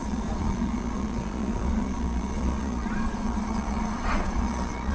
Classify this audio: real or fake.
fake